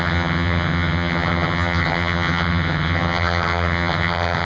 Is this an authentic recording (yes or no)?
no